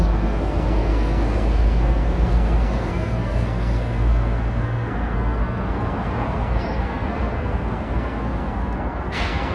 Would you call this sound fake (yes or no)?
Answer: yes